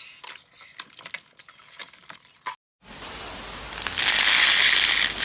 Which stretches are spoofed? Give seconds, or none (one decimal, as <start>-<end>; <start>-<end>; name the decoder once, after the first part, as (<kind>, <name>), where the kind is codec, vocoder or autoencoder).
none

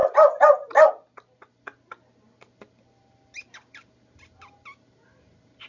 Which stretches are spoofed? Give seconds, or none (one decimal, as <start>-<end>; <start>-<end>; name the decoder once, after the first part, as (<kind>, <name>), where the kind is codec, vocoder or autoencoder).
none

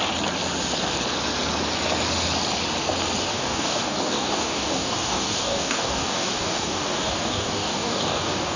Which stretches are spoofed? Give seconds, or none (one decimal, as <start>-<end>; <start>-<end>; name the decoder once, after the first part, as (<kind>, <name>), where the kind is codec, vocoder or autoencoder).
3.3-8.6 (codec, DAC)

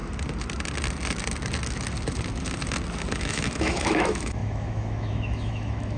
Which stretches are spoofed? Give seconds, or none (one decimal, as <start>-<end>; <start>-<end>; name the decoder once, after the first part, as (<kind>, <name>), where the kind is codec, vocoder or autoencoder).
3.2-6.0 (autoencoder, DAC-VAE)

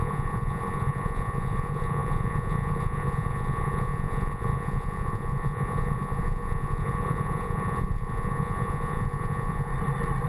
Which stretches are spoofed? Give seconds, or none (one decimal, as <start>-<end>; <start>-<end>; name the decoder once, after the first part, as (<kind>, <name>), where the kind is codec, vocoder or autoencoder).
0.0-9.7 (vocoder, Vocos)

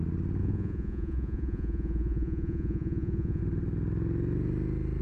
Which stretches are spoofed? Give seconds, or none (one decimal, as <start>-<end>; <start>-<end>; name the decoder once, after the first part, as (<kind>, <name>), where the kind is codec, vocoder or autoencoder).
0.4-3.4 (vocoder, Vocos)

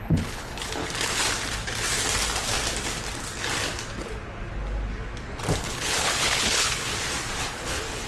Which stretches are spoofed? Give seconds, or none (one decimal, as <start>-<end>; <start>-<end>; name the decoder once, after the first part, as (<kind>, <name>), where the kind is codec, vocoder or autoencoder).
0.0-0.8 (codec, HILCodec); 5.6-6.9; 7.4-8.1

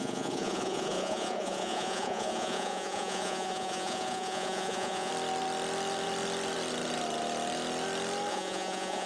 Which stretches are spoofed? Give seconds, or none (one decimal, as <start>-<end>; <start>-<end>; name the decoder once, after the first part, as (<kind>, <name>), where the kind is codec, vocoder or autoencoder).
0.0-5.1 (vocoder, Vocos); 8.3-9.1